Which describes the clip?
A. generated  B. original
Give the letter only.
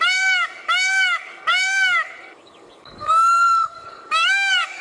A